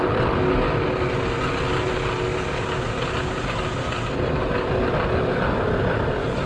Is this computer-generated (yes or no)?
no